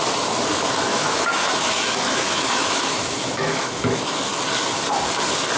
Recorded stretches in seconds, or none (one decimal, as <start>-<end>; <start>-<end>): 0.0-0.9; 4.3-5.6

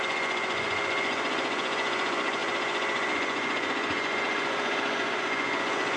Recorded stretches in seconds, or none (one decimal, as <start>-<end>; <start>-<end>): none

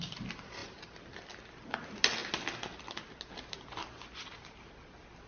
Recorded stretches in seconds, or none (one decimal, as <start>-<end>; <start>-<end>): 0.0-5.3

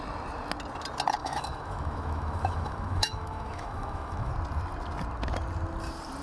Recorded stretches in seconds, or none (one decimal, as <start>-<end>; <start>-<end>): 0.0-1.2; 4.3-6.2

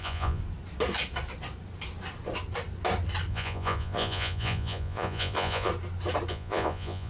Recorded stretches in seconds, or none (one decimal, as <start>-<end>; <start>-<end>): 0.4-3.3; 5.7-6.3